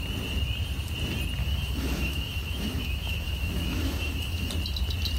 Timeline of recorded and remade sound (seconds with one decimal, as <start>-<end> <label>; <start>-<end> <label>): 0.0-1.4 recorded; 1.4-4.5 remade; 4.5-5.2 recorded